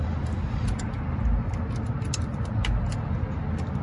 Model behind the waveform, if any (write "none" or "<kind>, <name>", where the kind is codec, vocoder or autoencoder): none